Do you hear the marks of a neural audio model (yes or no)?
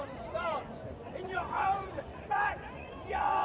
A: yes